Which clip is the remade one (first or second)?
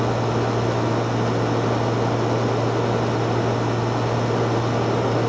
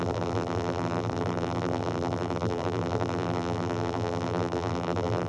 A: second